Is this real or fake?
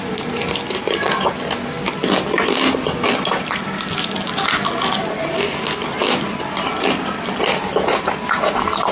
real